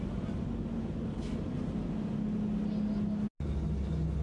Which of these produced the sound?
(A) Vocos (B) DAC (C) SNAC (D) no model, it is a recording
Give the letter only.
D